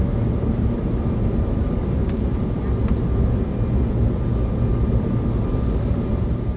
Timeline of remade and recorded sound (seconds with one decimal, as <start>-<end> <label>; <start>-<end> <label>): 0.0-1.8 remade; 1.8-5.8 recorded; 5.8-6.6 remade